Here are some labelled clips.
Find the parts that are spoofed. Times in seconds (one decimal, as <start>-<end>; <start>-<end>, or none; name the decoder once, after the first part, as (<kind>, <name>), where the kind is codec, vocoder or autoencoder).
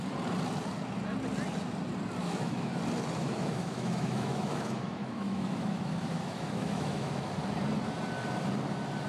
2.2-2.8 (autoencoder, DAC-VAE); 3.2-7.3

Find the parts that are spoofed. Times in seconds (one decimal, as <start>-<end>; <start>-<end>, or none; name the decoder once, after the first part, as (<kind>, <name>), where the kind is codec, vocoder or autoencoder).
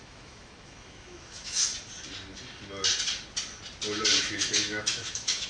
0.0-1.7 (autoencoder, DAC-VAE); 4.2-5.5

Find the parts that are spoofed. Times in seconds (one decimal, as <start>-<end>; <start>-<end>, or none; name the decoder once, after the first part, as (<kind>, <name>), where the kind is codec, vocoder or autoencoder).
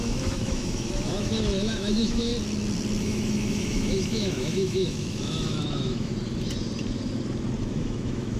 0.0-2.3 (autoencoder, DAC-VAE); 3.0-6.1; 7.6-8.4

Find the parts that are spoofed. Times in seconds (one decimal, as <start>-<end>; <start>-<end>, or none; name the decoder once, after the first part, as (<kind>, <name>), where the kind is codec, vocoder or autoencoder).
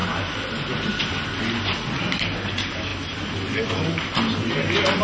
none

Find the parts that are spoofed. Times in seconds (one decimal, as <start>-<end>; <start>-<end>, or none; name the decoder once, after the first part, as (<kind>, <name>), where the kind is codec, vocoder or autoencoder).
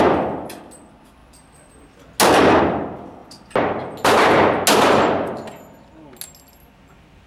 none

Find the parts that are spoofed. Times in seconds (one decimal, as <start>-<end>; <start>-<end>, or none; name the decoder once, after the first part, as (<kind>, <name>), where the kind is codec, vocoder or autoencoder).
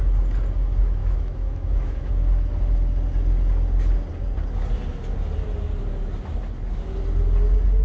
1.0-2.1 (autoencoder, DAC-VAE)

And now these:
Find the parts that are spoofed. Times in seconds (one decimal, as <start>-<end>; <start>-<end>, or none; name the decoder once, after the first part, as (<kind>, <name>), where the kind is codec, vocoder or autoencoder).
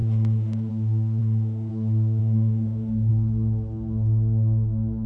0.0-0.7 (autoencoder, DAC-VAE); 1.2-1.7; 2.2-3.1